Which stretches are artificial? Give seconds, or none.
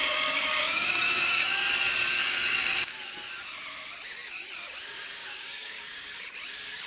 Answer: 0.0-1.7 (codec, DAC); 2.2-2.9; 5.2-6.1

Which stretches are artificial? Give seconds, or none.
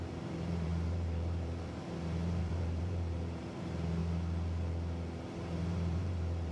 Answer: 0.0-4.0 (vocoder, BigVGAN v2); 5.3-6.5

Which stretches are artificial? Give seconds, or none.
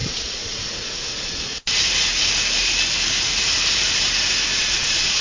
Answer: 0.0-1.5 (vocoder, Vocos); 4.6-5.2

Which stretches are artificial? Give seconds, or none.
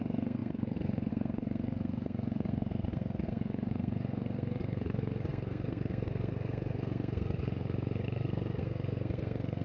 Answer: 0.0-9.6 (codec, SNAC)